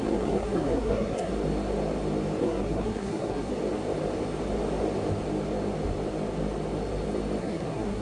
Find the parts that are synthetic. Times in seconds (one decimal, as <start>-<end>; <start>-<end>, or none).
0.0-1.3; 2.4-3.5; 7.4-8.0